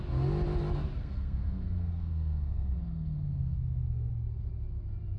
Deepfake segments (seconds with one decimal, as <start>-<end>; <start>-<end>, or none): 1.0-4.1